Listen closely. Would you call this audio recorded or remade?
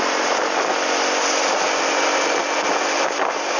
recorded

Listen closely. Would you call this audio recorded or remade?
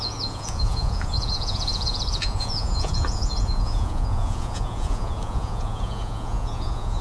remade